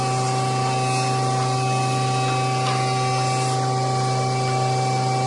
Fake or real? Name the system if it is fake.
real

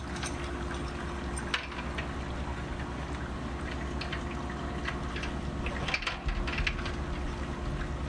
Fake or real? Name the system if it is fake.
real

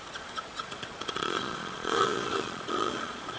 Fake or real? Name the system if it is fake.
fake, vocoder, Vocos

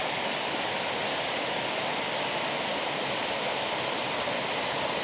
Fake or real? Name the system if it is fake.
real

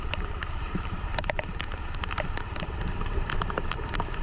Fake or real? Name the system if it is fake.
fake, vocoder, BigVGAN v2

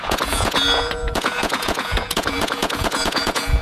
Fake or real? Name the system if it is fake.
fake, vocoder, Vocos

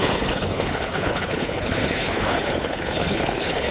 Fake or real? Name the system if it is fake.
fake, codec, HILCodec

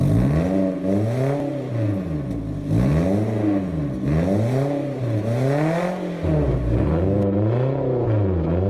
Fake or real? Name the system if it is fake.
real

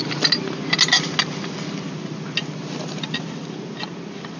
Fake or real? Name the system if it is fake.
real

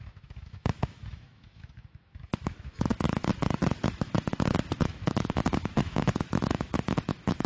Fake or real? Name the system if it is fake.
fake, autoencoder, DAC-VAE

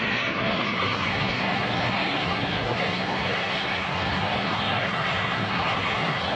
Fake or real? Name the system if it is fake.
fake, codec, SNAC